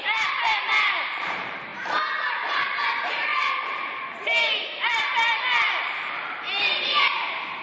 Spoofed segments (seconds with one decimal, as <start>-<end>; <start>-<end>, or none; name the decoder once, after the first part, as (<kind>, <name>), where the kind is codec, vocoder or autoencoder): 0.0-1.7 (vocoder, BigVGAN v2); 2.3-7.6